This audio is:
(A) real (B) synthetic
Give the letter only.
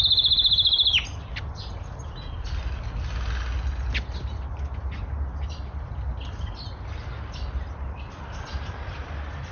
A